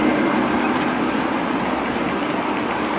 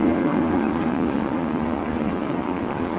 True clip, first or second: first